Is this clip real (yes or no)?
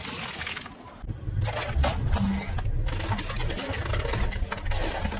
yes